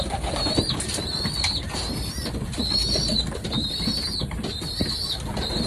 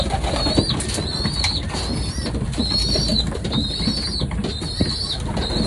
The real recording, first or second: second